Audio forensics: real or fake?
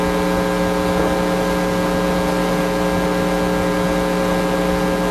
real